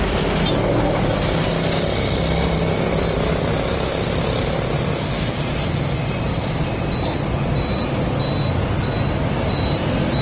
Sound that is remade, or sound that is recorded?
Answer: recorded